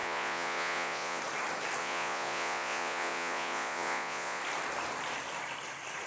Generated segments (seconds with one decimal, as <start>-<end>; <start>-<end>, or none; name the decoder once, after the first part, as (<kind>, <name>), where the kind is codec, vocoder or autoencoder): 0.0-1.2 (vocoder, Vocos); 1.8-4.4